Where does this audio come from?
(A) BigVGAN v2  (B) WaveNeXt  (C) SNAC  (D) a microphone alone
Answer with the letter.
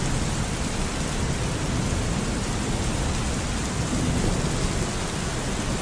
D